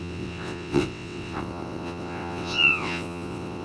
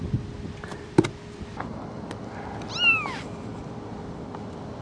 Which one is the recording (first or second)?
second